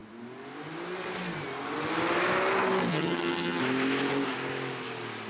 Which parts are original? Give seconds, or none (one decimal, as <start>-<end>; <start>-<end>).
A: 0.0-2.9; 3.6-5.3

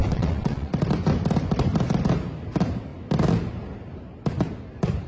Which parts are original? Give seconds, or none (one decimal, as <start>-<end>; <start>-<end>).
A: 0.7-5.1

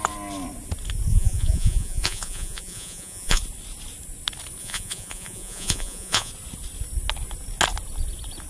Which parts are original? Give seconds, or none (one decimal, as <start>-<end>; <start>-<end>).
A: 0.0-1.1; 3.4-4.6; 6.3-8.5